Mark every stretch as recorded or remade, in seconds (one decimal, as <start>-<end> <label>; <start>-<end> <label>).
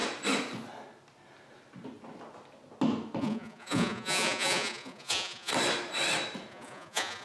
0.0-3.2 recorded; 3.2-5.5 remade; 5.5-6.5 recorded; 6.5-7.2 remade